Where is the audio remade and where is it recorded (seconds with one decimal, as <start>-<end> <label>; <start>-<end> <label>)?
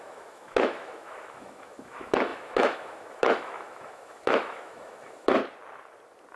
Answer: 0.0-5.4 remade; 5.4-6.4 recorded